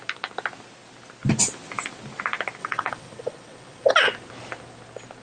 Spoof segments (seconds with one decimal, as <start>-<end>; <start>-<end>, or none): 2.6-3.9